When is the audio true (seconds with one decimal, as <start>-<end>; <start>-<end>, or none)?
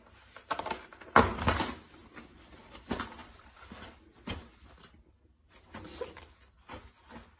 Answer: 0.0-7.4